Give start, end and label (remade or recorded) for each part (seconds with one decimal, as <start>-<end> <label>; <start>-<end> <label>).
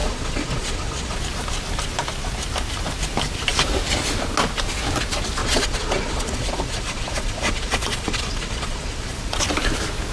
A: 0.0-1.2 remade; 1.2-5.4 recorded; 5.4-9.4 remade; 9.4-10.1 recorded